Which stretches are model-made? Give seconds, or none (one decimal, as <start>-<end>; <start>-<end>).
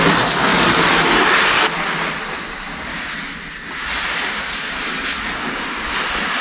none